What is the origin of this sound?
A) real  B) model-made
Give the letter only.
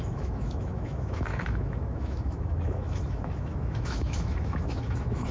B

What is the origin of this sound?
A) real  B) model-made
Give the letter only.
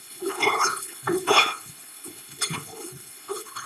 B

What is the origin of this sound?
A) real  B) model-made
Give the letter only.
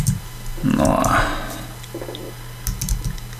A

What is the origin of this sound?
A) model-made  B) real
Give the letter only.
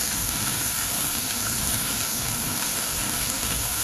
A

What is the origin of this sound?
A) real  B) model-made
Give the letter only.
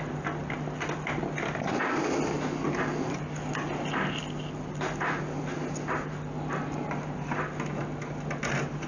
A